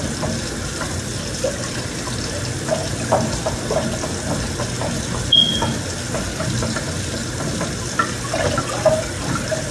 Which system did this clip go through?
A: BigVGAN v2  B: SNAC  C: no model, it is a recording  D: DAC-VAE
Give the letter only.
C